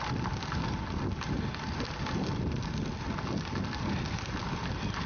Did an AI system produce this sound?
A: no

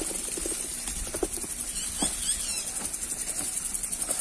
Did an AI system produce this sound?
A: no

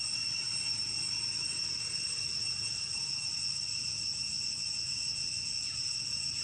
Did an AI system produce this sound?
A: no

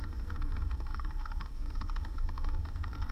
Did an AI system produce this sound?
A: yes